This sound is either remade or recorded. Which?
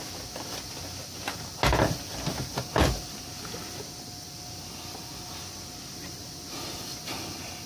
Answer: recorded